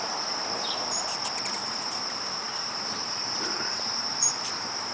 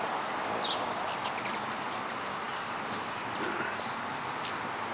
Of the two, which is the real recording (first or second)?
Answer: second